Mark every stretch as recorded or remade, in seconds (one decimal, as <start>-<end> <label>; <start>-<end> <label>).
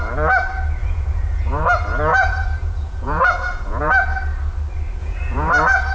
0.0-0.8 recorded; 0.8-1.6 remade; 1.6-2.1 recorded; 2.1-3.9 remade; 3.9-5.0 recorded; 5.0-5.5 remade; 5.5-5.9 recorded